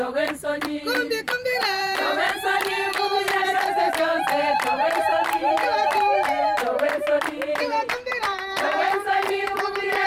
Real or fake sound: fake